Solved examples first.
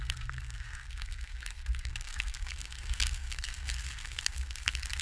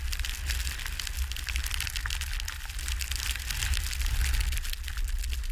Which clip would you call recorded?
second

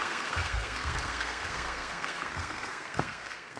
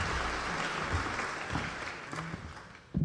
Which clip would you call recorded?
second